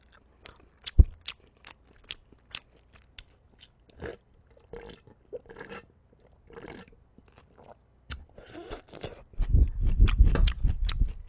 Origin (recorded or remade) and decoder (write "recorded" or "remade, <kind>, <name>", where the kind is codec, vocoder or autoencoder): recorded